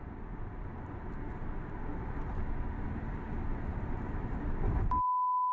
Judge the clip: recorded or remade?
recorded